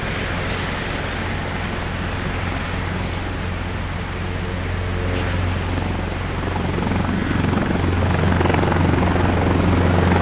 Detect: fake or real real